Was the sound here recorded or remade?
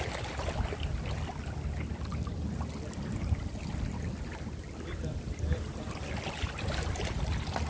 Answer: recorded